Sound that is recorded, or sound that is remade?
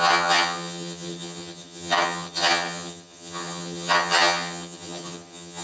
remade